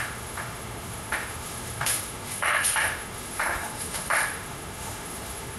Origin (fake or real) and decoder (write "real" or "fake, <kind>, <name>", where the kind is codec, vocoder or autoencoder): fake, autoencoder, DAC-VAE